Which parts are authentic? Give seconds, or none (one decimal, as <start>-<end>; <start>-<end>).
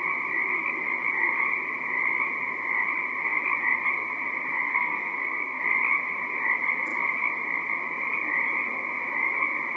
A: 0.0-4.7; 5.6-9.8